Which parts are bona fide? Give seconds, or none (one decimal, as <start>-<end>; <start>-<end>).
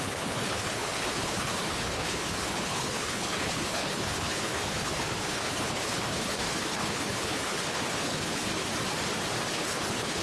8.5-9.5